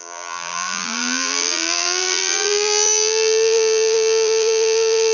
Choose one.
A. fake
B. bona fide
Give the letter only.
A